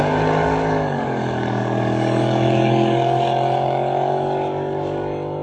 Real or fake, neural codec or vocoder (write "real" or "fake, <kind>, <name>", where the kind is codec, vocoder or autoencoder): fake, codec, DAC